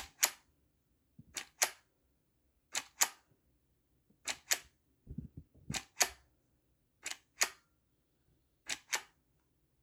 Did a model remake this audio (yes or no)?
no